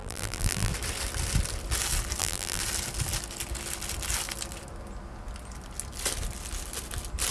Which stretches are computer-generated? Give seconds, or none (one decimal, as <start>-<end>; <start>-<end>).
0.0-0.7; 2.2-2.6